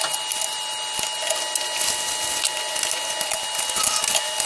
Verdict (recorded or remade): recorded